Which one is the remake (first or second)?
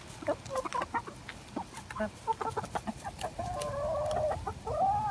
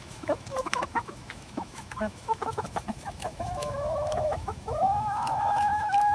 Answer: second